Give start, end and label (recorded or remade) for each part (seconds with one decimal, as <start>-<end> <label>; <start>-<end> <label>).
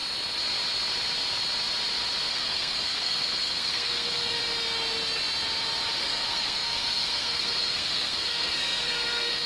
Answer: 0.0-2.3 recorded; 2.3-4.4 remade; 4.4-6.0 recorded; 6.0-9.5 remade